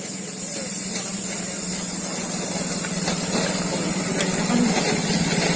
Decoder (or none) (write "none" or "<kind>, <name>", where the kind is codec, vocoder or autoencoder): none